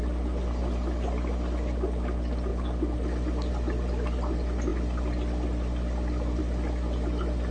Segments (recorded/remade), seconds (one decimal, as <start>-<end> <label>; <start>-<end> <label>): 0.0-7.5 recorded